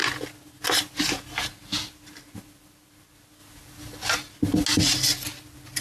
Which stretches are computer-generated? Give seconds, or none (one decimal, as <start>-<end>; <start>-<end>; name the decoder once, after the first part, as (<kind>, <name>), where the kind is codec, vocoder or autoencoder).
none